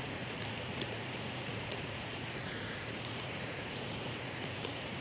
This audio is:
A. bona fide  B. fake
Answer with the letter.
B